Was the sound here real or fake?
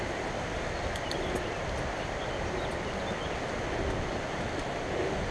real